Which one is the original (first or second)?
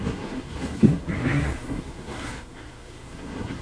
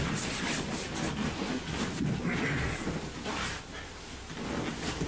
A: second